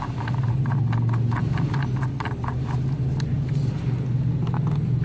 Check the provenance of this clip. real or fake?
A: real